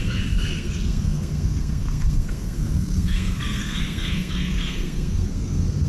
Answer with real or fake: fake